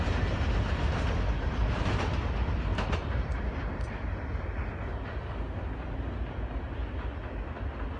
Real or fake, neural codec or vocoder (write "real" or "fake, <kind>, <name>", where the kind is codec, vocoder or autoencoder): real